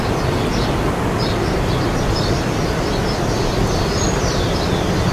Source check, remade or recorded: recorded